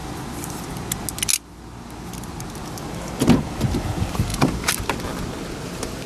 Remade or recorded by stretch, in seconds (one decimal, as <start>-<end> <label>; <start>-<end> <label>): 0.0-6.1 recorded